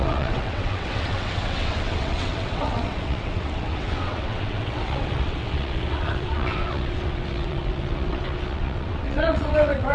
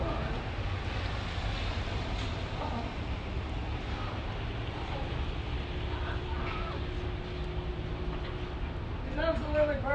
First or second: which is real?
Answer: second